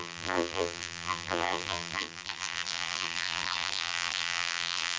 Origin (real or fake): fake